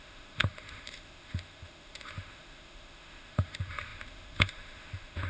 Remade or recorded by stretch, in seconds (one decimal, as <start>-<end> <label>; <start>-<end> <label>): 0.0-5.3 remade